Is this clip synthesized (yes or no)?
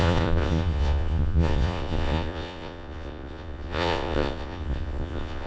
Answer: yes